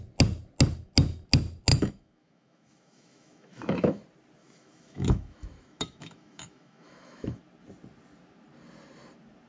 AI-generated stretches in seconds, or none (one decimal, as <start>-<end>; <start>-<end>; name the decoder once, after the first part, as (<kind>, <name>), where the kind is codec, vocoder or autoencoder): 1.7-4.0 (autoencoder, DAC-VAE); 4.4-7.4